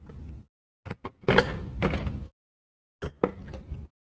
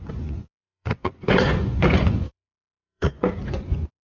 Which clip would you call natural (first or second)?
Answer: first